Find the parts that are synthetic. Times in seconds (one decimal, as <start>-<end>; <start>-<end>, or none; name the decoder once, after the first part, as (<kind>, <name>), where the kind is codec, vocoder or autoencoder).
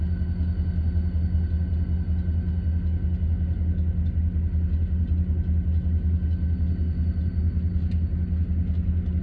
none